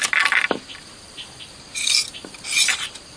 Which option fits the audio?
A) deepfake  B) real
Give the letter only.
B